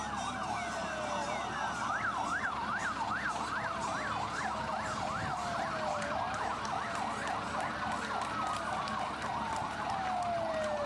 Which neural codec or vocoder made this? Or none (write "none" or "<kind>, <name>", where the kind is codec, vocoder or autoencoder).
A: none